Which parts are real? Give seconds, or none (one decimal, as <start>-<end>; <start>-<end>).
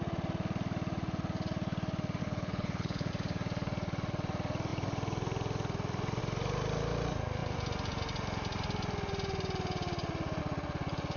0.0-2.2; 3.1-11.2